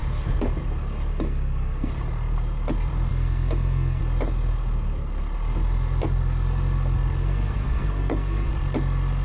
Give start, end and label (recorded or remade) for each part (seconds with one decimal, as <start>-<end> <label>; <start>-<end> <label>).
0.0-1.1 recorded; 1.1-1.9 remade; 1.9-3.1 recorded; 3.1-4.0 remade; 4.0-7.2 recorded; 7.2-8.5 remade; 8.5-9.2 recorded